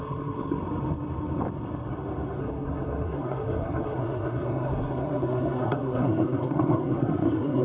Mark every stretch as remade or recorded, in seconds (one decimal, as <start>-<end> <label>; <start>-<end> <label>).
0.0-0.6 remade; 0.6-2.4 recorded; 2.4-7.6 remade